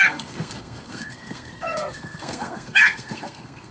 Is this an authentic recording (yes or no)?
no